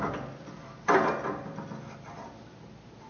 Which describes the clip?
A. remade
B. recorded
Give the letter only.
B